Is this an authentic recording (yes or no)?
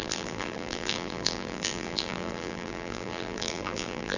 no